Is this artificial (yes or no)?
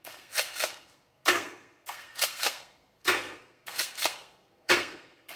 yes